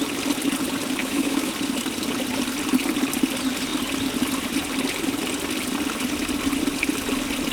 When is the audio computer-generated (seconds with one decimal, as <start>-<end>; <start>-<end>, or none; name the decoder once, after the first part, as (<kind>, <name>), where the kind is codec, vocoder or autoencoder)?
1.0-1.5 (autoencoder, DAC-VAE)